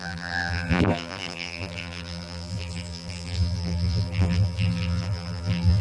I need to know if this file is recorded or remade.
remade